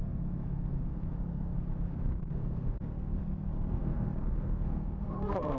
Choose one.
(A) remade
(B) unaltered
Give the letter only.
A